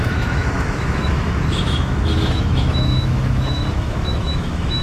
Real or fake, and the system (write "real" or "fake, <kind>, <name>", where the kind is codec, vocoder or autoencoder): fake, autoencoder, DAC-VAE